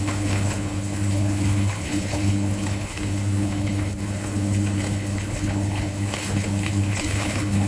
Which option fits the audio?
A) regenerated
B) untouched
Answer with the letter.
A